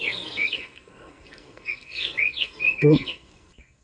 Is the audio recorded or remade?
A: remade